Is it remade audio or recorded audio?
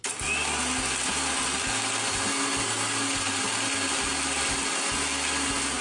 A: recorded